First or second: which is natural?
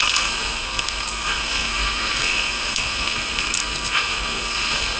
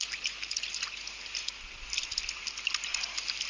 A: second